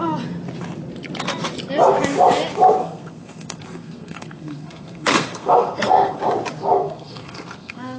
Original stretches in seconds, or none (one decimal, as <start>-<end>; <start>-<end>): 0.0-2.8; 6.2-6.8